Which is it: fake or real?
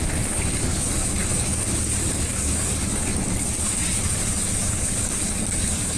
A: fake